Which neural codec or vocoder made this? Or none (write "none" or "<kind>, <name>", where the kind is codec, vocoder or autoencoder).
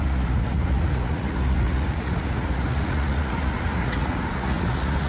vocoder, Vocos